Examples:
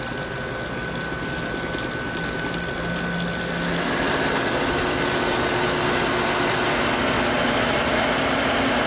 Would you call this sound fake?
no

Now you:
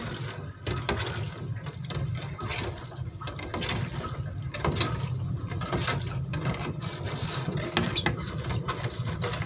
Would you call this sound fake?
no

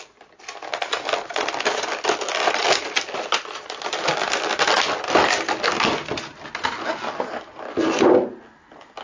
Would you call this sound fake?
no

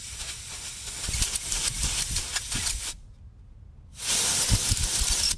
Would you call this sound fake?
no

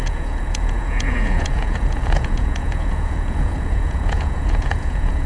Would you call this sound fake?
yes